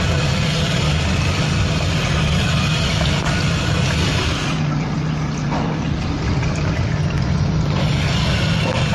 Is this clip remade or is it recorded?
recorded